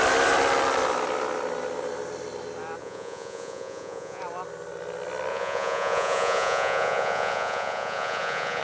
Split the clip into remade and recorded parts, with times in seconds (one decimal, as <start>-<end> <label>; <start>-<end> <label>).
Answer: 0.0-2.8 recorded; 2.8-4.2 remade; 4.2-5.3 recorded; 5.3-8.6 remade

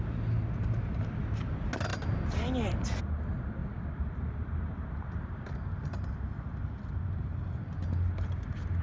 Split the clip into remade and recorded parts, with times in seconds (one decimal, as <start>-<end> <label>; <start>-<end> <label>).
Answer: 0.0-8.8 recorded

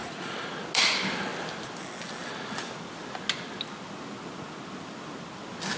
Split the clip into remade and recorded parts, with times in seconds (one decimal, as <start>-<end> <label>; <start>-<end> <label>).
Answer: 0.0-0.5 remade; 0.5-5.8 recorded